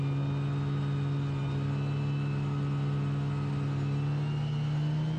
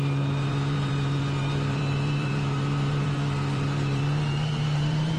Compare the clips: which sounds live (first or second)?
first